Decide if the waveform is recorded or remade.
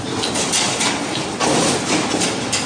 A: recorded